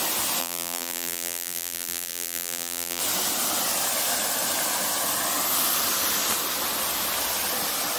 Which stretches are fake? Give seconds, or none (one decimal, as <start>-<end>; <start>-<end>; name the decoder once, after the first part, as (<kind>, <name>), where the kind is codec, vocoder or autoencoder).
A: 0.4-3.0 (vocoder, BigVGAN v2)